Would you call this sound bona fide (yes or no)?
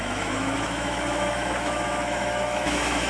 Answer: no